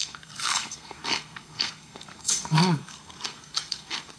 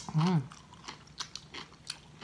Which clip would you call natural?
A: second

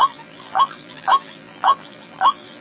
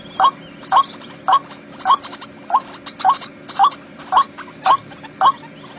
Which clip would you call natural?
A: second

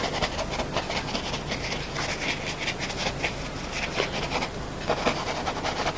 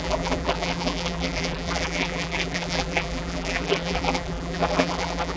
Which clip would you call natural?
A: first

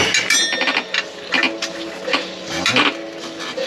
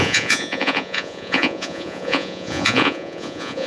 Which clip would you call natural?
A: first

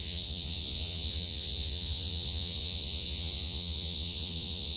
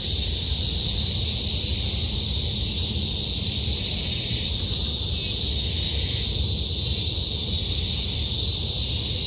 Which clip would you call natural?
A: second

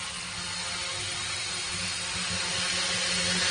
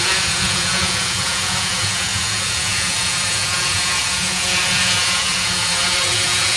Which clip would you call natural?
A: first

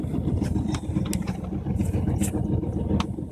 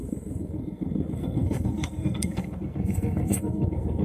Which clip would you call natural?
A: first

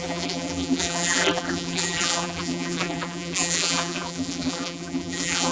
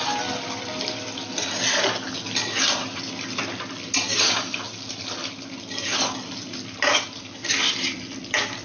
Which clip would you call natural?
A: second